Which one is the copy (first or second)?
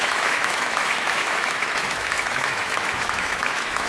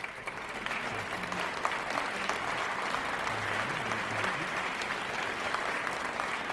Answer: first